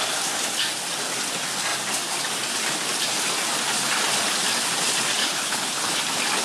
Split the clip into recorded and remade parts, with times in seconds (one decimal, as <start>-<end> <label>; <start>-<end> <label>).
0.0-5.2 recorded; 5.2-6.0 remade; 6.0-6.4 recorded